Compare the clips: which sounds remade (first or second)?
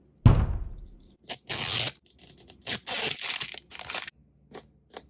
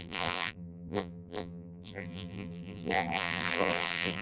second